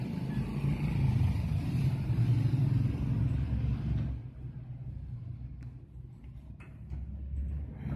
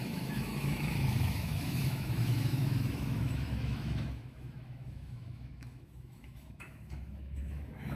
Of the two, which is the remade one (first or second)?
second